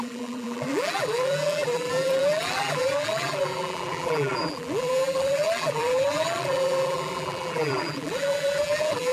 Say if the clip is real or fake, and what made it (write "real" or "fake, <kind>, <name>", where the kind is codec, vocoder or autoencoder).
fake, vocoder, BigVGAN v2